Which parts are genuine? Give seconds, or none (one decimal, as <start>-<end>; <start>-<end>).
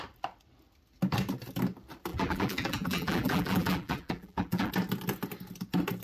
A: 0.0-2.1; 4.7-6.0